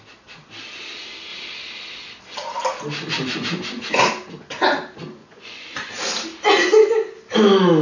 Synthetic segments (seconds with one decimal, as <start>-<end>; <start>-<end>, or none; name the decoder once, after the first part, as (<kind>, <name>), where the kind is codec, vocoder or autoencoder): 5.2-5.9 (vocoder, Vocos)